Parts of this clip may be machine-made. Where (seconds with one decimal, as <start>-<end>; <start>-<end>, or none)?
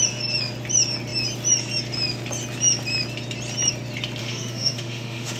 4.2-5.4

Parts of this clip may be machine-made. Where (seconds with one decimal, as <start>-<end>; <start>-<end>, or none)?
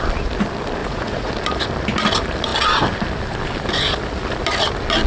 0.8-1.3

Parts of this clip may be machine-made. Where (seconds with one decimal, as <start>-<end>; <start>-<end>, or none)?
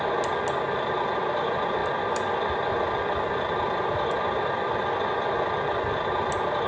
none